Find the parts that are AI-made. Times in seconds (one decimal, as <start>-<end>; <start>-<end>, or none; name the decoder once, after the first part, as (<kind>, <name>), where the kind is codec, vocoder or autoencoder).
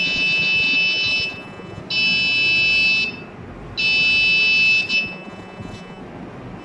0.0-1.8 (vocoder, Vocos); 4.9-6.0